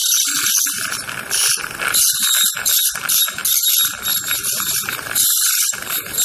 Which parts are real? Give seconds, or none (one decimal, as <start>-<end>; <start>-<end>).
3.4-4.3